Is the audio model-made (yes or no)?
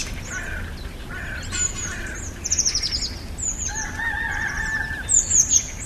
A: no